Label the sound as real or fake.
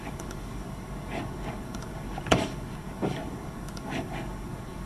fake